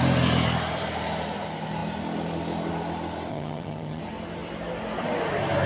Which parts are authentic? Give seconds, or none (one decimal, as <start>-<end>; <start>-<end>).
0.0-3.3; 4.0-5.7